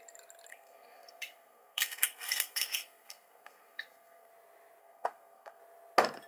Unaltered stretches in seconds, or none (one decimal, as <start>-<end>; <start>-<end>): 0.0-0.5; 4.3-4.8; 5.6-6.3